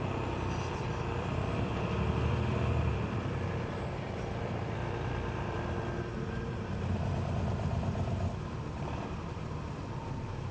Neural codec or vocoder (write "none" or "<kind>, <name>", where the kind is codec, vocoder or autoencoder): vocoder, BigVGAN v2